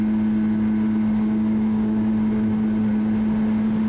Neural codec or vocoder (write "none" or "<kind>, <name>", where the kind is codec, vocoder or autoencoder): none